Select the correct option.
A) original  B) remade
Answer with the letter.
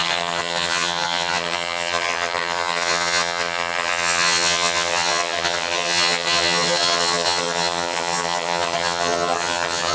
B